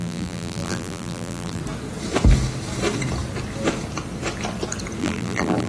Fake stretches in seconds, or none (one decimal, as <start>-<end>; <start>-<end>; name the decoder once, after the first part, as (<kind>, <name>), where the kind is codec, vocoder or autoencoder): 0.0-1.6 (vocoder, BigVGAN v2); 5.0-5.7